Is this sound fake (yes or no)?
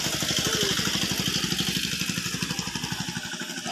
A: no